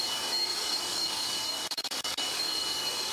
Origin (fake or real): fake